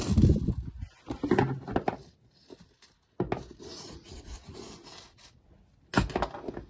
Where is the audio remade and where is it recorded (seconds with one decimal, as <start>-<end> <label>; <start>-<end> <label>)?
0.0-3.6 recorded; 3.6-4.7 remade; 4.7-6.7 recorded